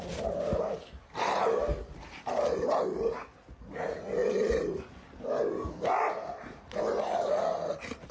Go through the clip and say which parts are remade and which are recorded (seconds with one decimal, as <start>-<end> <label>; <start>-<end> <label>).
0.0-8.1 recorded